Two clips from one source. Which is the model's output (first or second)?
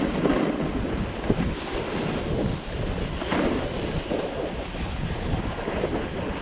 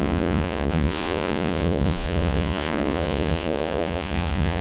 second